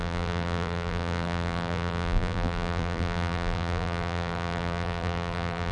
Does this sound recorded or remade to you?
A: remade